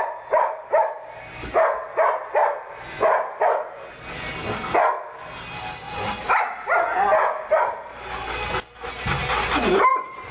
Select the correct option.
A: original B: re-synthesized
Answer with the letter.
A